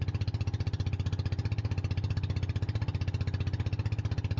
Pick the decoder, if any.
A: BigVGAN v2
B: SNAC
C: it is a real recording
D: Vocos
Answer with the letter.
C